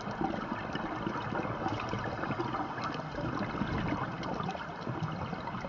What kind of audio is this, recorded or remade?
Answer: recorded